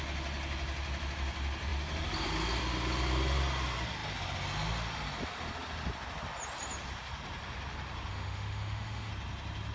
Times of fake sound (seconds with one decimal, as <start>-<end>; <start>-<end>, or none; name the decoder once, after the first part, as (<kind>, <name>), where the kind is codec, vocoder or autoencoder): 8.1-9.1 (autoencoder, DAC-VAE)

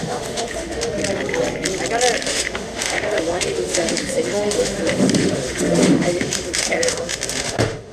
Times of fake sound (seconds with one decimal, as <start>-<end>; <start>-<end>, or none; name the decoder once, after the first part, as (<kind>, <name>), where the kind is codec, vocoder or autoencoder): 0.0-1.0 (autoencoder, DAC-VAE); 2.2-7.9

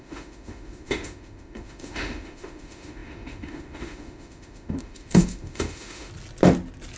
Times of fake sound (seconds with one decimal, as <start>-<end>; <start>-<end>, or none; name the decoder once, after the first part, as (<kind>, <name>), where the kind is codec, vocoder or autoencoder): 0.0-6.1 (autoencoder, DAC-VAE)

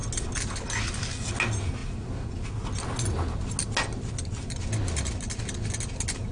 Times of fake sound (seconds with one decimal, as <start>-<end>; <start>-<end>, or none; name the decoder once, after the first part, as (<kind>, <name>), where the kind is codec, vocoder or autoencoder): none

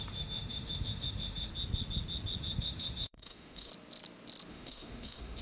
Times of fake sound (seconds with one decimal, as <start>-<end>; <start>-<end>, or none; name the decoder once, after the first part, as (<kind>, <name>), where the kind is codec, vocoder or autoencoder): 0.0-1.5 (autoencoder, DAC-VAE); 2.4-3.7; 4.5-5.4